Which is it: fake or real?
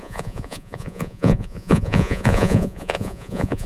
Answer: fake